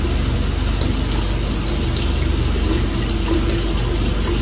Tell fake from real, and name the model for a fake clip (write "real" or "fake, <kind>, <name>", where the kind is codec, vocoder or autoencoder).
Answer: real